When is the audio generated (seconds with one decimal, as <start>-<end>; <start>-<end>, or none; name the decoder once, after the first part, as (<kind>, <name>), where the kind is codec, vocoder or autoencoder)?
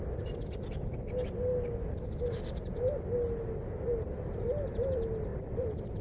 none